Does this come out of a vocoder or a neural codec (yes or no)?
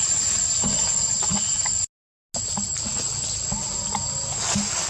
no